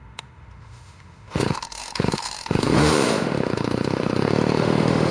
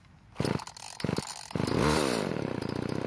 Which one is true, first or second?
second